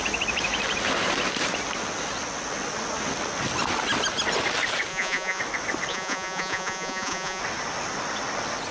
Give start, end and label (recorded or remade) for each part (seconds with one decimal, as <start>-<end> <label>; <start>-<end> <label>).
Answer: 0.0-4.9 recorded; 4.9-5.4 remade; 5.4-5.9 recorded; 5.9-7.4 remade; 7.4-8.7 recorded